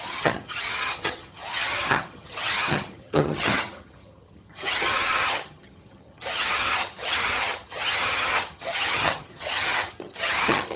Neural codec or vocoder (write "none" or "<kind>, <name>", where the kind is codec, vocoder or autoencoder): vocoder, HiFi-GAN